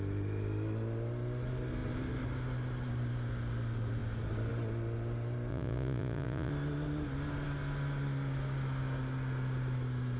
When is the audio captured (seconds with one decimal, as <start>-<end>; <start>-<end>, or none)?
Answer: 0.0-5.5; 6.5-10.2